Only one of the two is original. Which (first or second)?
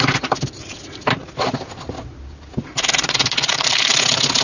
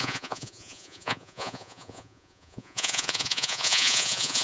first